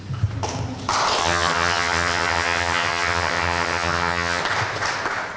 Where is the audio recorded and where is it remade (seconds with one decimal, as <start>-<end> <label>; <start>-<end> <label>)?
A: 0.0-1.2 recorded; 1.2-4.4 remade; 4.4-5.4 recorded

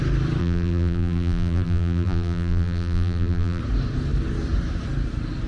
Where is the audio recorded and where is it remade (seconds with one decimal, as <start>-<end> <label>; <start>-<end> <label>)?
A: 0.0-0.4 recorded; 0.4-3.6 remade; 3.6-5.5 recorded